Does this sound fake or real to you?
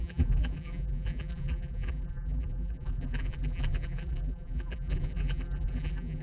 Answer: fake